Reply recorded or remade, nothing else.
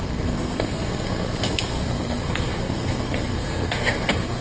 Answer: remade